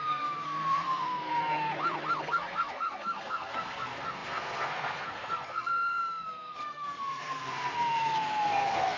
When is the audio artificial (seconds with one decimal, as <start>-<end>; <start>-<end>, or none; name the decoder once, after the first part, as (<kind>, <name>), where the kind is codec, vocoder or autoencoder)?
0.0-1.7 (codec, SNAC); 2.2-9.0